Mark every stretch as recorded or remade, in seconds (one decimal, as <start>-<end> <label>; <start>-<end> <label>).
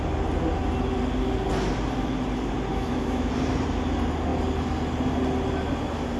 0.0-2.7 recorded; 2.7-3.3 remade; 3.3-6.2 recorded